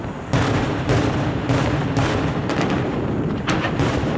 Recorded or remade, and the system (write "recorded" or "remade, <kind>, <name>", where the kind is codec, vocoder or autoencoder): recorded